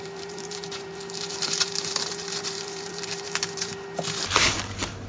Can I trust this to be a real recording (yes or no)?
no